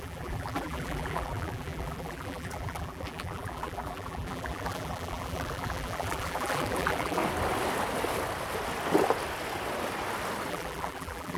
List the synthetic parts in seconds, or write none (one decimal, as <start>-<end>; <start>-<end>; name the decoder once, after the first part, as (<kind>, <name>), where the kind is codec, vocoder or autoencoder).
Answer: 0.0-7.2 (vocoder, BigVGAN v2); 10.5-11.4